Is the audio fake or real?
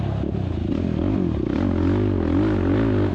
real